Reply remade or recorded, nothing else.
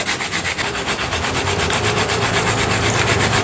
recorded